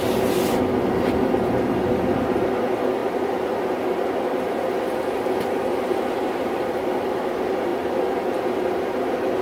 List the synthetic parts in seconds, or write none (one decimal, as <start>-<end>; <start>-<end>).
none